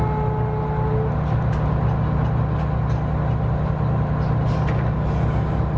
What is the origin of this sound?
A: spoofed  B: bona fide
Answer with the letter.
B